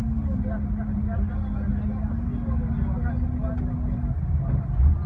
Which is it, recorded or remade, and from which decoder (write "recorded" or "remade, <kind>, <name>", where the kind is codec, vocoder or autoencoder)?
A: recorded